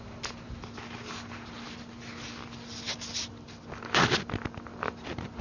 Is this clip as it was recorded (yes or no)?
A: yes